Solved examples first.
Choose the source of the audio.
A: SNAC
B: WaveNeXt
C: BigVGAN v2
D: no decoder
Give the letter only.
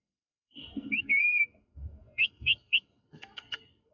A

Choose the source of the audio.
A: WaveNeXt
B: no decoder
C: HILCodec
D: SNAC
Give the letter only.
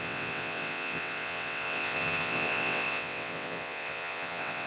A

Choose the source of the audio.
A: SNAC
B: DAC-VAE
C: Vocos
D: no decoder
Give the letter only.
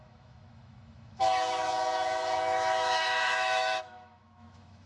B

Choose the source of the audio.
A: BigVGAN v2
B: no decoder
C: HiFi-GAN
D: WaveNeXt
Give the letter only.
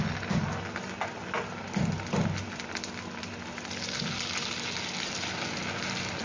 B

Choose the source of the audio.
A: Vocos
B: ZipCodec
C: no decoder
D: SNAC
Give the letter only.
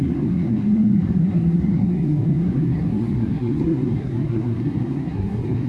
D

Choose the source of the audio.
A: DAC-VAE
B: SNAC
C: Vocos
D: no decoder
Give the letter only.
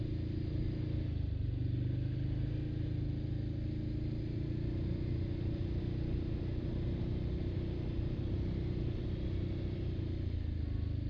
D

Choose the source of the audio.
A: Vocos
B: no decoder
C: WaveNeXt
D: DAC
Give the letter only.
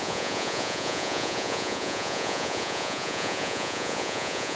A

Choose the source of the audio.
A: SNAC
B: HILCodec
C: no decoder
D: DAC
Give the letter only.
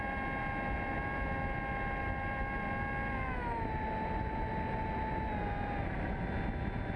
C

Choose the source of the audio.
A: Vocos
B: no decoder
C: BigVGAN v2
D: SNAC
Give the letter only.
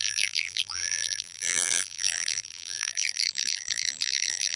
C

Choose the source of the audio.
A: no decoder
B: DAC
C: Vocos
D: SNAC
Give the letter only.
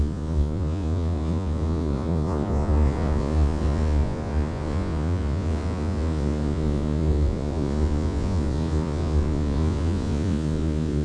C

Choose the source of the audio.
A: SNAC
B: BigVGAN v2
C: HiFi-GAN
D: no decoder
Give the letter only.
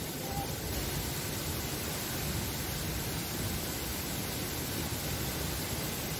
B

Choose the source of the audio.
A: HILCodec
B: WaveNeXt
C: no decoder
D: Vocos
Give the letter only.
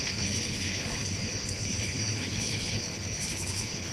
A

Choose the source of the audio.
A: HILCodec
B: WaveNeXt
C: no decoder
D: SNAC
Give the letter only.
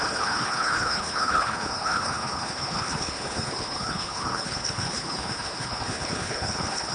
A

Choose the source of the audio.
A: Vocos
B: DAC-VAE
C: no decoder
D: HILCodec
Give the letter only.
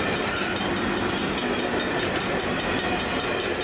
C